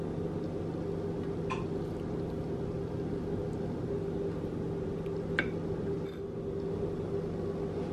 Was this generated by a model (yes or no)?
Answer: no